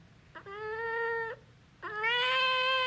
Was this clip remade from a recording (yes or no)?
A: no